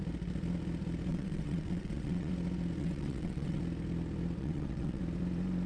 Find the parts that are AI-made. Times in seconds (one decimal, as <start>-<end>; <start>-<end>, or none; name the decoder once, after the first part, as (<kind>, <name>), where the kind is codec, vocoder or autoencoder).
1.1-2.3 (vocoder, WaveNeXt); 2.8-3.6; 4.4-5.0